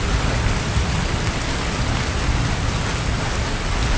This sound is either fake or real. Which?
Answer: real